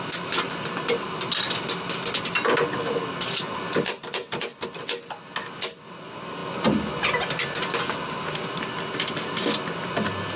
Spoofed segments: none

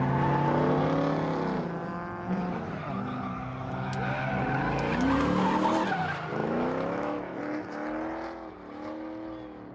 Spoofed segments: 6.4-7.4 (autoencoder, DAC-VAE)

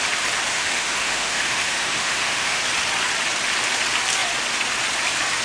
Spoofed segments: 0.5-2.6 (autoencoder, DAC-VAE)

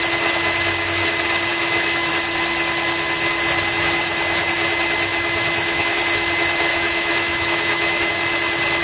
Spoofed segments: 1.5-2.1 (autoencoder, DAC-VAE); 5.1-6.0; 6.7-8.1

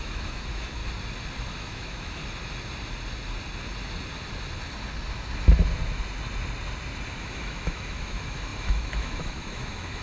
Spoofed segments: 0.0-0.8 (autoencoder, DAC-VAE); 1.5-2.2; 7.2-10.0

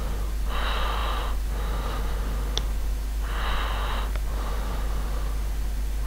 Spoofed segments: none